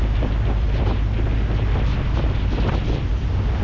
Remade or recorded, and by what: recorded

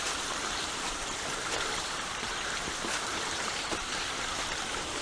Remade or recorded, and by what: remade, vocoder, BigVGAN v2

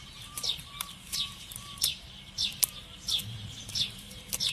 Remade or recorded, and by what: remade, vocoder, BigVGAN v2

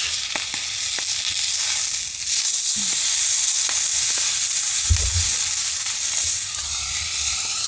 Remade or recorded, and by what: recorded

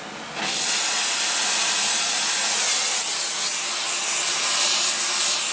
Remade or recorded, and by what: recorded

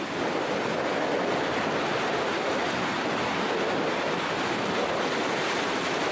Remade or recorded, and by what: recorded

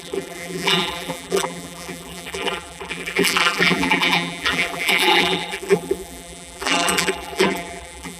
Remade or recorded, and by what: remade, vocoder, BigVGAN v2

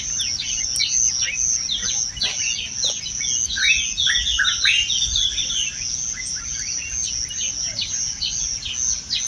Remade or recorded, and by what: recorded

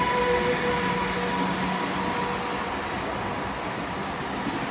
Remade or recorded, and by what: recorded